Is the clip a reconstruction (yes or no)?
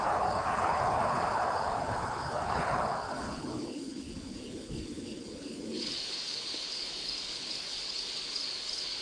yes